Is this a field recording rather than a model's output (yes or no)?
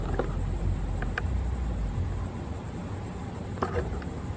yes